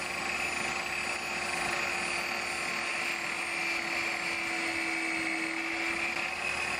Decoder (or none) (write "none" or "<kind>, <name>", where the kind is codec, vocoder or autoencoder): none